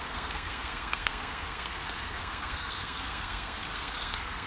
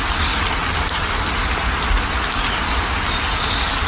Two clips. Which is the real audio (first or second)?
second